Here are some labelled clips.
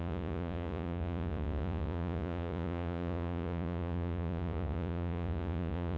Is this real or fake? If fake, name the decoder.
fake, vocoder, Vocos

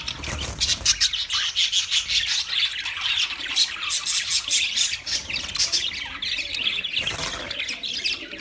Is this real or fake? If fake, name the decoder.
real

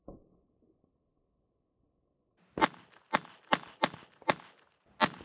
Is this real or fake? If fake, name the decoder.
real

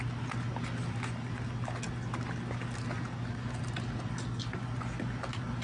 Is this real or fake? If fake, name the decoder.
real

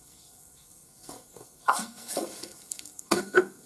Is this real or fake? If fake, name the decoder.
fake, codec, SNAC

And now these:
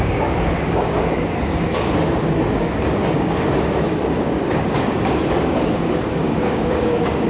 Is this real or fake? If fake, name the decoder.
fake, codec, DAC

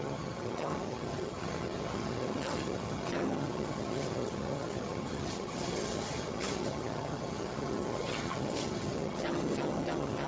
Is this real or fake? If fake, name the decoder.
fake, vocoder, HiFi-GAN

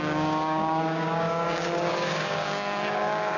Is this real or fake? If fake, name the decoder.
fake, codec, DAC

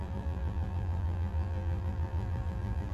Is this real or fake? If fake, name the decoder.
fake, vocoder, BigVGAN v2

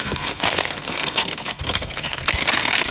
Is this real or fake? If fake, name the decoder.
fake, codec, SNAC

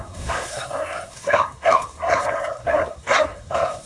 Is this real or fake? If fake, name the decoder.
fake, codec, SNAC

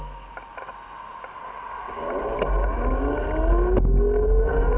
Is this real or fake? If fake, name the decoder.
real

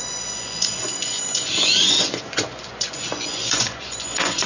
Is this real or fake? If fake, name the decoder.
fake, vocoder, Vocos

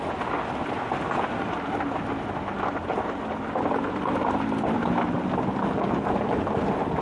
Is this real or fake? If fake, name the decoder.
real